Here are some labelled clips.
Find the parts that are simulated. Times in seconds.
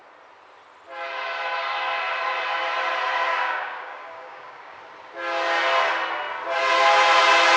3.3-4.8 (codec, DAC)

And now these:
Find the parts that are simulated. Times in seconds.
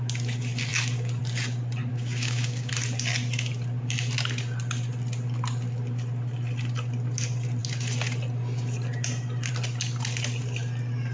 1.9-2.7 (codec, DAC)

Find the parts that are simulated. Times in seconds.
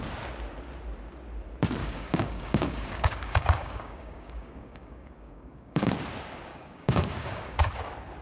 1.8-5.9 (codec, DAC); 6.5-7.7